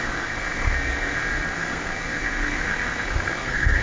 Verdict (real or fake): fake